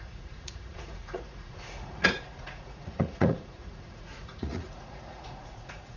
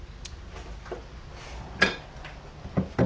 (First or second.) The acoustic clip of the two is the second